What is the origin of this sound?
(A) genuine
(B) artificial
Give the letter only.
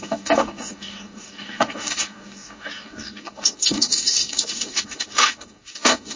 B